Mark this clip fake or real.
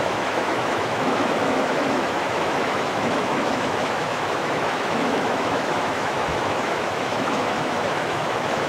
fake